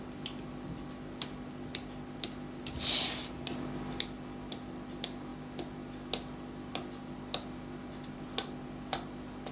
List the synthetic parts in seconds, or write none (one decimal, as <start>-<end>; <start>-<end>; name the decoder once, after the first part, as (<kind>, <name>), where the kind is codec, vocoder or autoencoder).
none